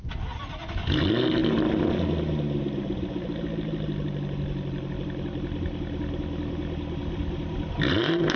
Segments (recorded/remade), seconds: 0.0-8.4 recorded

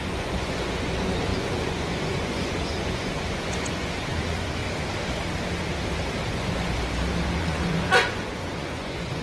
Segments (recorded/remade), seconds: 0.0-4.6 remade; 4.6-6.3 recorded; 6.3-6.8 remade; 6.8-7.4 recorded; 7.4-9.2 remade

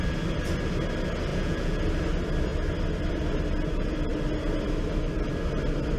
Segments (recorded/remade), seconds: 0.0-1.3 recorded; 1.3-1.8 remade; 1.8-6.0 recorded